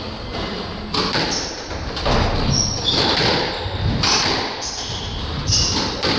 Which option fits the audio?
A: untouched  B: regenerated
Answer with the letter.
A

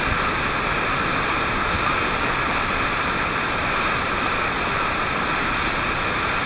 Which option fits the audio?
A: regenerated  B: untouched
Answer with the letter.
B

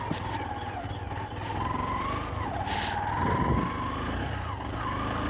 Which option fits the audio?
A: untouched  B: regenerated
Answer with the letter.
A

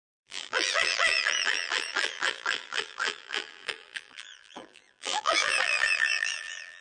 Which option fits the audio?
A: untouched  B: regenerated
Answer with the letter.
B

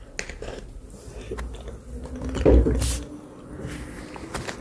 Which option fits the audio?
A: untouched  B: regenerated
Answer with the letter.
A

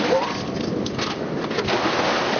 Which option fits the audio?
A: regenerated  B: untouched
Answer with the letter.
B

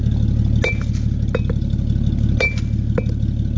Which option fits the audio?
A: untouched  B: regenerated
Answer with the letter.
A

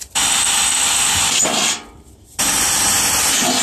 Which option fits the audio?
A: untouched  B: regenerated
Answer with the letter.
A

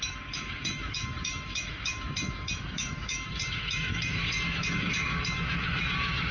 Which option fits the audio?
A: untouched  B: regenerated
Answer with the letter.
B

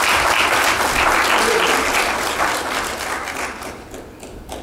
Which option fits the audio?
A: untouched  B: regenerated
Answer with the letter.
A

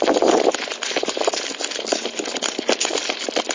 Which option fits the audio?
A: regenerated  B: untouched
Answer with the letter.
B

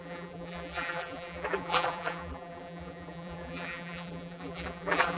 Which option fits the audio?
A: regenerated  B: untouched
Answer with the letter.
A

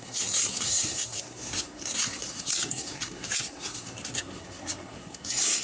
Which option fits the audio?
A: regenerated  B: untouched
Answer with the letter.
A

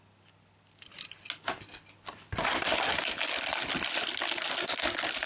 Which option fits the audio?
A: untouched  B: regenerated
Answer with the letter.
A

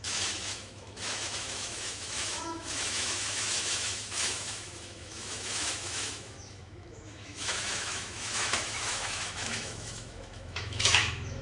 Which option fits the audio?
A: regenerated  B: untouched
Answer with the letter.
A